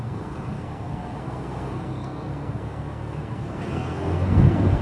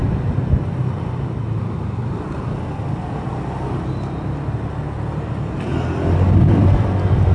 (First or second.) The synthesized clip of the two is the first